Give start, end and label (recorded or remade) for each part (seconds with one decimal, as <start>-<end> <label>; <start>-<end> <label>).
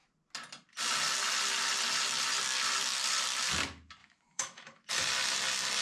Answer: 0.0-4.0 recorded; 4.0-4.9 remade; 4.9-5.8 recorded